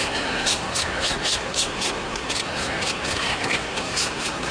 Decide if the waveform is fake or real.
fake